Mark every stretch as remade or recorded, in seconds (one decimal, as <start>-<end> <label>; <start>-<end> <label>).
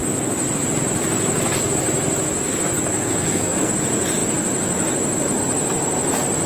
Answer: 0.0-3.0 recorded; 3.0-3.7 remade; 3.7-6.5 recorded